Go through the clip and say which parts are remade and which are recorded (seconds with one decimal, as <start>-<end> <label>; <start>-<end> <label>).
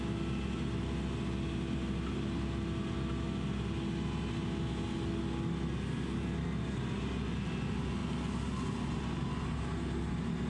0.0-10.5 recorded